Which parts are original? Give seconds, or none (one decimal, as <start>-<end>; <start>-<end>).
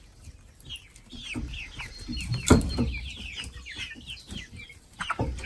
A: 0.0-5.5